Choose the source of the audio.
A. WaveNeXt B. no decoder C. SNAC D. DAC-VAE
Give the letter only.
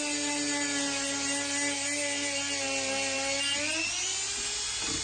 B